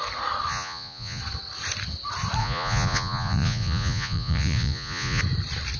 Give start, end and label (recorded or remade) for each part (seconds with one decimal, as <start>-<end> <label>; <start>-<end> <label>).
0.0-0.5 recorded; 0.5-1.2 remade; 1.2-2.4 recorded; 2.4-5.2 remade; 5.2-5.8 recorded